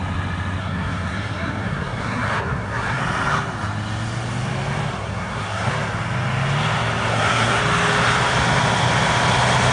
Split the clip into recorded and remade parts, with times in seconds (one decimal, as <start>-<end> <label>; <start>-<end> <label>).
0.0-0.6 recorded; 0.6-3.0 remade; 3.0-5.0 recorded; 5.0-5.7 remade; 5.7-7.1 recorded; 7.1-7.6 remade; 7.6-9.7 recorded

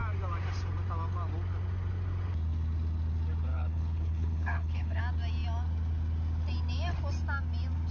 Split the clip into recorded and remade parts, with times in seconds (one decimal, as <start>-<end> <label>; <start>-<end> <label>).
0.0-3.5 recorded; 3.5-5.0 remade; 5.0-7.9 recorded

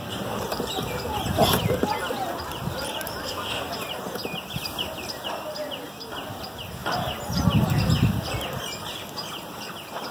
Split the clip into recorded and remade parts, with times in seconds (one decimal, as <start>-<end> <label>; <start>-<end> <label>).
0.0-3.2 recorded; 3.2-3.7 remade; 3.7-10.1 recorded